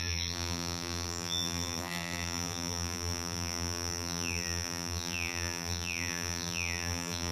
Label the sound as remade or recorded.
remade